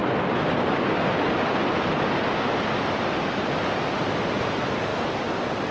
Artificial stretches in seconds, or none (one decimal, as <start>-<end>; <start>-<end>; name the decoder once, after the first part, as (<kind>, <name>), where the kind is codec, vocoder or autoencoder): none